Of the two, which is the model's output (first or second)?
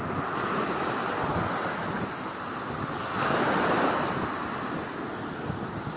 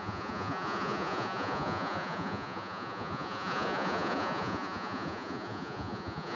second